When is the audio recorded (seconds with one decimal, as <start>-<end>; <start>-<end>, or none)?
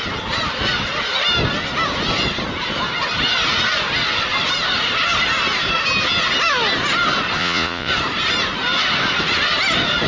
0.0-7.4; 7.9-10.1